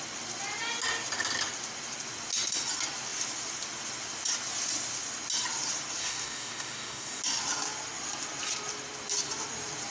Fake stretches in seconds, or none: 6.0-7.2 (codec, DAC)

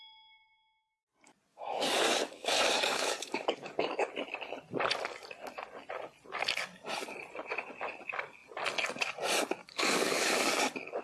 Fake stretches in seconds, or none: 1.5-4.1 (codec, DAC); 9.6-10.5

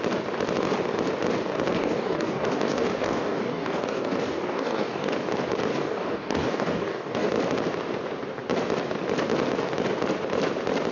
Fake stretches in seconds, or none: 1.7-5.2 (codec, DAC); 5.7-7.3